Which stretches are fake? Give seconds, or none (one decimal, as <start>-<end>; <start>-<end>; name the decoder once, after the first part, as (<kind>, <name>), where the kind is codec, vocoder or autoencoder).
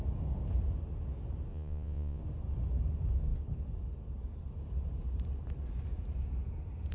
1.5-2.2 (vocoder, Vocos)